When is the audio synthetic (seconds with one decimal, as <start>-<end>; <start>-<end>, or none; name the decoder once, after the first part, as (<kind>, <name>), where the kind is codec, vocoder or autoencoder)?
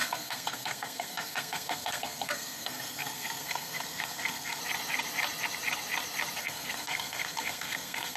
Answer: 0.0-4.6 (codec, SNAC); 6.4-8.2